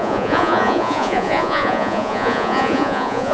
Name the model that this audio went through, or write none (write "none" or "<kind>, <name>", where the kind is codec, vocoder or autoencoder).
vocoder, Vocos